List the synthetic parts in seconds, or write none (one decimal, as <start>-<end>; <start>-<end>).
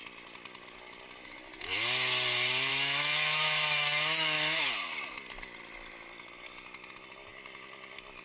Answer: 2.7-4.7